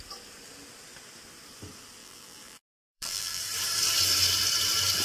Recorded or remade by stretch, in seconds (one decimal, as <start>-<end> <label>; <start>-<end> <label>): 0.0-2.0 recorded; 2.0-3.4 remade; 3.4-5.0 recorded